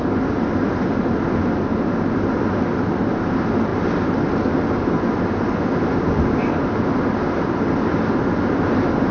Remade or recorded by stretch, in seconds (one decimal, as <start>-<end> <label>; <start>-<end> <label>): 0.0-9.1 recorded